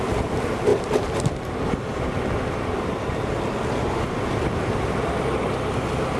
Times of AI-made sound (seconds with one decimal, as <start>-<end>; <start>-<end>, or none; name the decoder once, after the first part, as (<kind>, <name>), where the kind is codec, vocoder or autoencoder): none